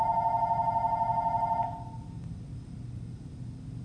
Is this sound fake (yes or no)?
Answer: no